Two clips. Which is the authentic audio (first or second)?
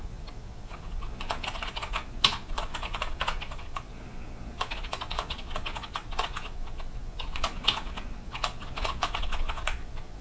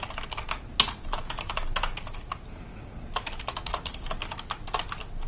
second